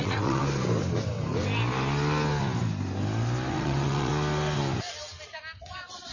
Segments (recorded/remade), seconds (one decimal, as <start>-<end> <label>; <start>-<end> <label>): 0.0-0.4 remade; 0.4-3.5 recorded; 3.5-4.1 remade; 4.1-5.6 recorded; 5.6-6.1 remade